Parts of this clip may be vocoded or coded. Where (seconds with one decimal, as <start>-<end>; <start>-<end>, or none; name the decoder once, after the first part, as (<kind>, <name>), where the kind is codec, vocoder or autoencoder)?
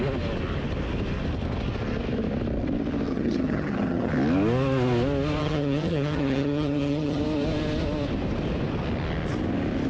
3.1-4.1 (vocoder, HiFi-GAN); 5.4-7.2